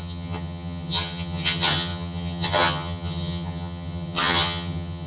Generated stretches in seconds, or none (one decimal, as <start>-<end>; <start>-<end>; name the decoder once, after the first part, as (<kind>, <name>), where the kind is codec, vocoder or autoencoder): 0.0-5.1 (vocoder, HiFi-GAN)